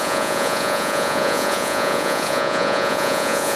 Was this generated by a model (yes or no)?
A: yes